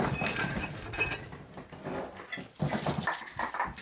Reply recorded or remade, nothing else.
recorded